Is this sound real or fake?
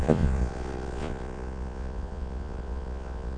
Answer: fake